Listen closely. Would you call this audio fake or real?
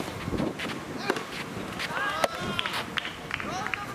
real